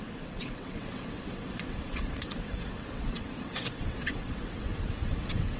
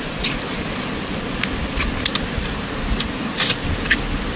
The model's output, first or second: first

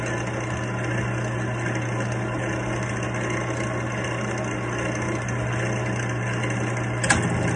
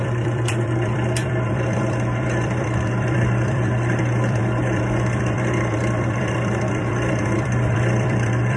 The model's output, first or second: second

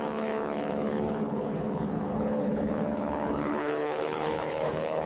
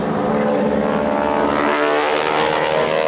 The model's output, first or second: first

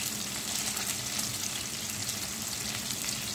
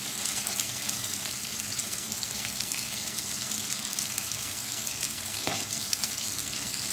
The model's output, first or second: second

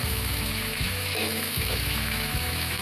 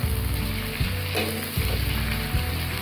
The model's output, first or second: first